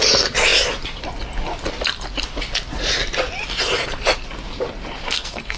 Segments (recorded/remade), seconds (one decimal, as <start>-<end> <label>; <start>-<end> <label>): 0.0-5.0 recorded; 5.0-5.6 remade